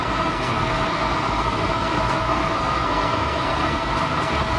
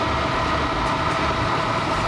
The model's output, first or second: first